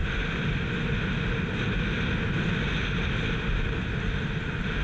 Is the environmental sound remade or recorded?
recorded